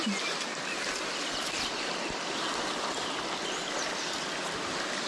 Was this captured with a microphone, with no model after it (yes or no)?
yes